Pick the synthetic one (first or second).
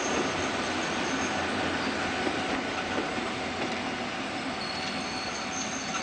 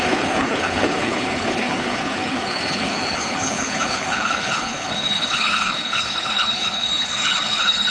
second